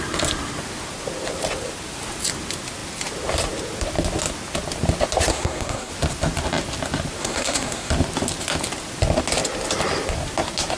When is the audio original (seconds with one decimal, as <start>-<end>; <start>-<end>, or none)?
0.0-5.3; 5.9-7.2; 7.9-10.8

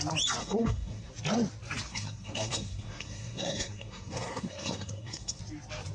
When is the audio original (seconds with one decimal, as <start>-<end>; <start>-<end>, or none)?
0.0-0.4; 1.1-1.9; 5.4-5.9

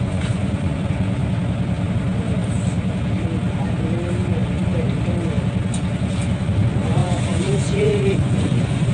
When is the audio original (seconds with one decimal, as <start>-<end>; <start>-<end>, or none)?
1.2-6.4

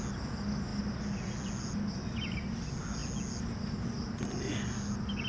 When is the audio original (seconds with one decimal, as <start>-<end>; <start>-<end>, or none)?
0.0-5.3